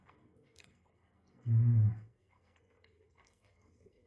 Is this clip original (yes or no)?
no